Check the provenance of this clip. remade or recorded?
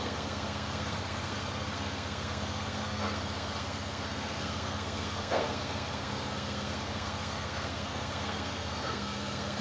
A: remade